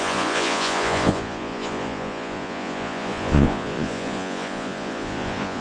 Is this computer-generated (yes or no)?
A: yes